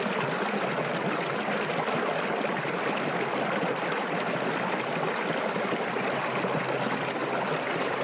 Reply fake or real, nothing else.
real